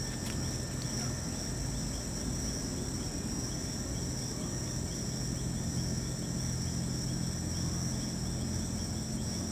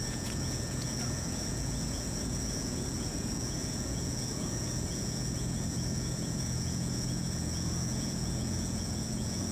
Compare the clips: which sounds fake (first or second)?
second